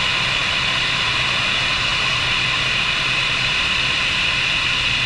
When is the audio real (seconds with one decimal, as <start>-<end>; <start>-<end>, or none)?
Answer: 0.0-0.4; 1.1-1.9